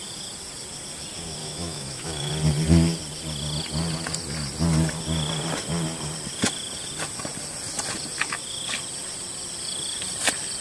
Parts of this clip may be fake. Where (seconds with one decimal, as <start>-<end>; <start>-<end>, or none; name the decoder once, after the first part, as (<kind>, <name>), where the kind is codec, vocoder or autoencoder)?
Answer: 1.4-2.3 (autoencoder, DAC-VAE)